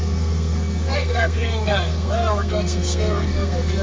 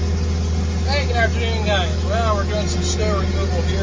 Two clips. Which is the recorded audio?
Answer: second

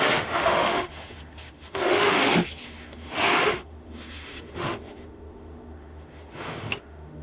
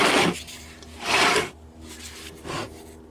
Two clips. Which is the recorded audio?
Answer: second